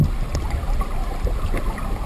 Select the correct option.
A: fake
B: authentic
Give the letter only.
B